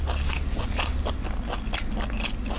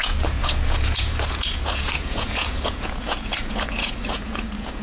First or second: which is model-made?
second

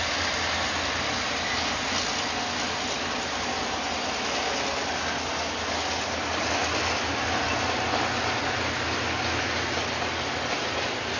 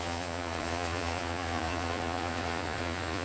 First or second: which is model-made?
second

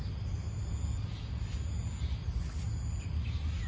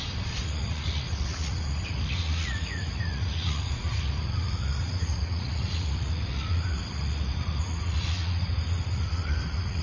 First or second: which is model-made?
second